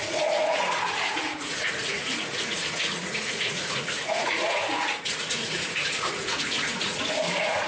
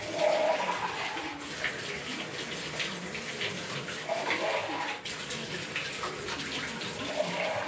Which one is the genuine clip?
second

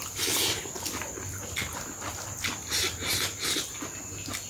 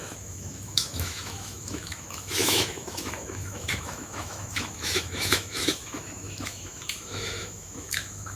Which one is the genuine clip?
first